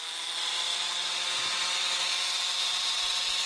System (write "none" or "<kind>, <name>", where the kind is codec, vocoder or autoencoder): none